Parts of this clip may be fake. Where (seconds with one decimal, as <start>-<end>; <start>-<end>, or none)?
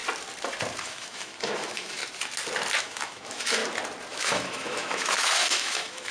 0.8-2.0; 2.8-3.6; 4.1-6.1